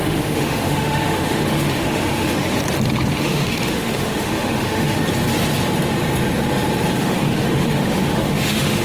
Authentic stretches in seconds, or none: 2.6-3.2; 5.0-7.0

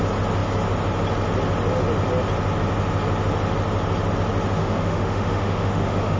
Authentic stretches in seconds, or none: 0.0-4.6

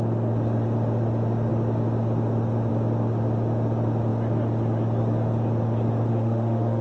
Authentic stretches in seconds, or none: 0.0-6.1

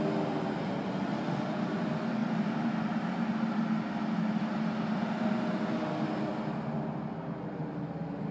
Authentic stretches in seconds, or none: 0.0-8.3

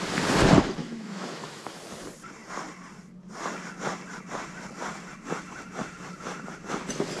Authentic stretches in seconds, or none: 0.0-0.8; 1.8-7.2

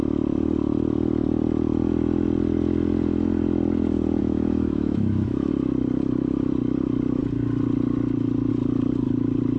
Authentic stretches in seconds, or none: 0.0-4.2; 5.5-9.6

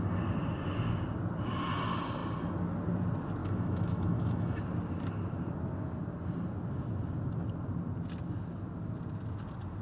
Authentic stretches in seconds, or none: 0.0-3.4; 4.6-9.8